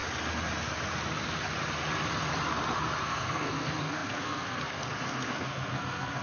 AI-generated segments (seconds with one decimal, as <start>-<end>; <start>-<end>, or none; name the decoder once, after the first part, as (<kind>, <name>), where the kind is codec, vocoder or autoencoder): 3.0-6.2 (codec, SNAC)